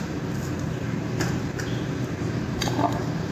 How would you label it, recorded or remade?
recorded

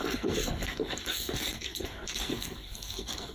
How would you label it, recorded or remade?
remade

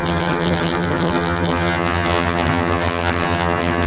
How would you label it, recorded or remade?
remade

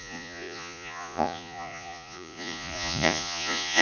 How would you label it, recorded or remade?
remade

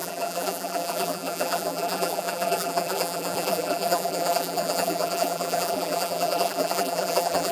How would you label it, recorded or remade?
remade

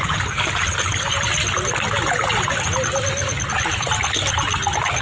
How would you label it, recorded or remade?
recorded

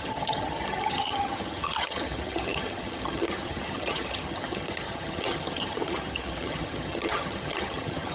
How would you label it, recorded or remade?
remade